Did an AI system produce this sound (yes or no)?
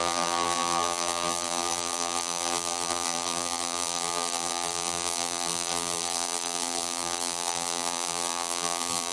yes